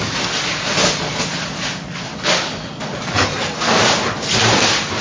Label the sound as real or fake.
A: real